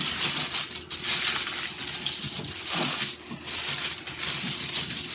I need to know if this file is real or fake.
real